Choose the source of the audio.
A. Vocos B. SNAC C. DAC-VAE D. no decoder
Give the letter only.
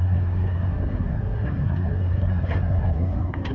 B